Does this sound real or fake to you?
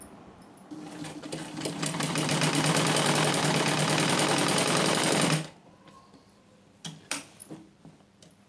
fake